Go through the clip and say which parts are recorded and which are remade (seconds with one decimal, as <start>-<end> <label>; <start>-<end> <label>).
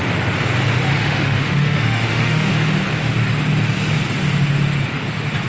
0.0-1.0 recorded; 1.0-2.5 remade; 2.5-5.5 recorded